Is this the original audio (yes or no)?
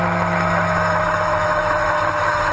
no